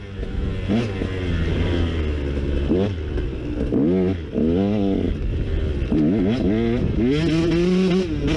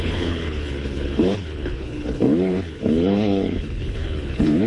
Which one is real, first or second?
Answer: first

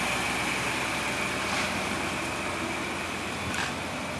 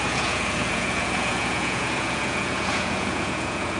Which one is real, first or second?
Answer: first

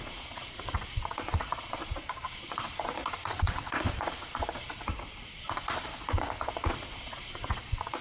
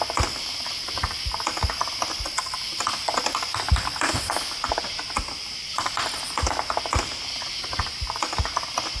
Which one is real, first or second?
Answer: second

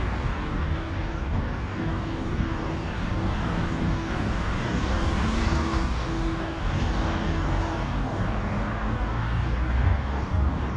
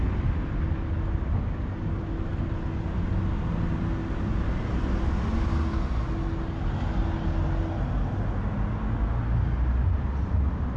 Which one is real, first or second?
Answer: second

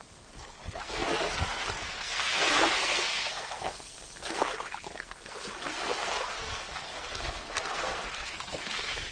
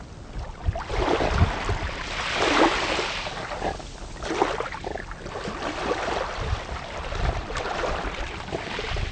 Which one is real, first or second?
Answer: second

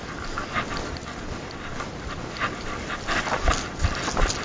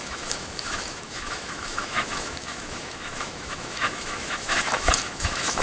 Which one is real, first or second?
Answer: first